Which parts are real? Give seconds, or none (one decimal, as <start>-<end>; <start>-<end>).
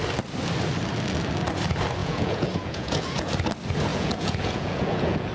0.0-2.0; 3.3-3.9